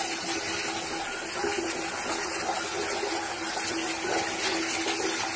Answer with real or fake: real